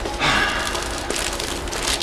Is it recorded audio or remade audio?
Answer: recorded